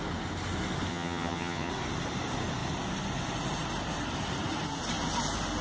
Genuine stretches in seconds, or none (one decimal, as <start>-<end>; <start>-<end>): 0.0-0.9; 1.7-5.6